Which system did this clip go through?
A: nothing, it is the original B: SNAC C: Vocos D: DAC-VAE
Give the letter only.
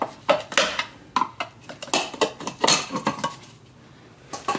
A